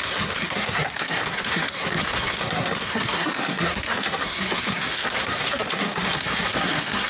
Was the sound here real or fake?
fake